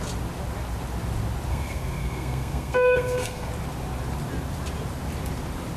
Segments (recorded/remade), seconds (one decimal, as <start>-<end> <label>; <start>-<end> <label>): 0.0-1.5 recorded; 1.5-3.5 remade; 3.5-5.8 recorded